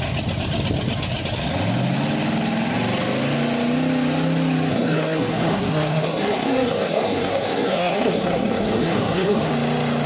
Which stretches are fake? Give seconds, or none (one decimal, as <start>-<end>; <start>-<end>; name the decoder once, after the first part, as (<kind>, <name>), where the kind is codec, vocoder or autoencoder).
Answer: 4.7-9.5 (codec, SNAC)